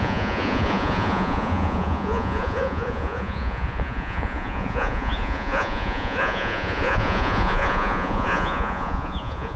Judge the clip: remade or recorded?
remade